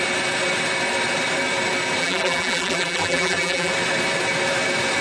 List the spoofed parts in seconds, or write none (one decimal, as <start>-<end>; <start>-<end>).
2.0-3.7